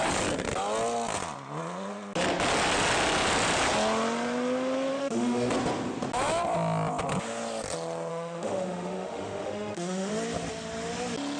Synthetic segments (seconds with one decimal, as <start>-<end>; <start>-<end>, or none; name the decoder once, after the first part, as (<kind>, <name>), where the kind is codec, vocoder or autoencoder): 5.0-5.5 (autoencoder, DAC-VAE); 8.1-10.1